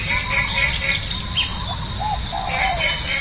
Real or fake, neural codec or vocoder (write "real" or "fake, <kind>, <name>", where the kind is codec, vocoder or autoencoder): real